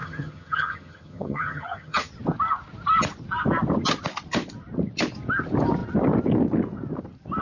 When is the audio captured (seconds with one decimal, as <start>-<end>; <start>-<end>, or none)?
2.1-7.4

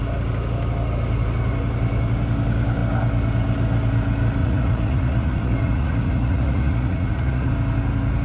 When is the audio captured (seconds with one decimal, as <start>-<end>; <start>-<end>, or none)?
0.0-4.4; 7.5-8.2